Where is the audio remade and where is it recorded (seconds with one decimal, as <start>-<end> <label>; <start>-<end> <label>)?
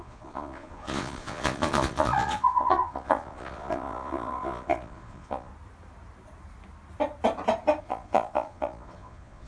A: 0.0-5.5 remade; 5.5-7.8 recorded; 7.8-9.5 remade